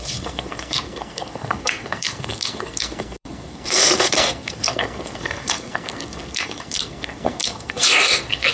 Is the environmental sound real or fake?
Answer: fake